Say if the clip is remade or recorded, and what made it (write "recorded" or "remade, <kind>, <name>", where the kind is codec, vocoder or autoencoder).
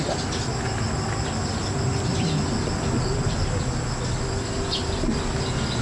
recorded